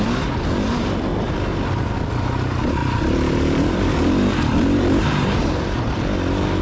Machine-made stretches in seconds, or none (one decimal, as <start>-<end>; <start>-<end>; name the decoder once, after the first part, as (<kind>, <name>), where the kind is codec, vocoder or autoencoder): 2.8-5.8 (vocoder, BigVGAN v2)